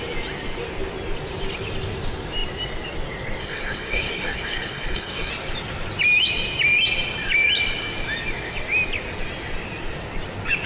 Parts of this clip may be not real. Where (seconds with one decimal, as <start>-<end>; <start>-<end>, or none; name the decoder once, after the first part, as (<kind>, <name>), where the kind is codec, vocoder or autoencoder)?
3.4-5.3 (codec, SNAC)